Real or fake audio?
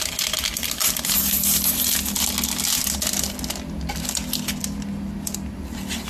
real